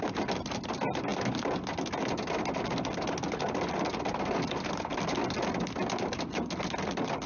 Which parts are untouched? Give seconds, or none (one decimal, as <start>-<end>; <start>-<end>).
1.1-5.5